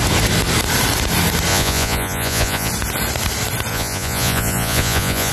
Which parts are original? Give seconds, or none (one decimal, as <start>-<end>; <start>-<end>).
0.0-1.5; 2.7-3.7